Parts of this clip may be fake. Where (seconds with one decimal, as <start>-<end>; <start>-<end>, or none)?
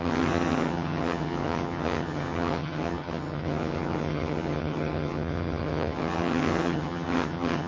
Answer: 0.0-7.7